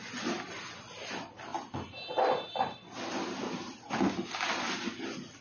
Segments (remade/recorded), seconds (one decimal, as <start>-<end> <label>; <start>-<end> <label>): 0.0-5.4 recorded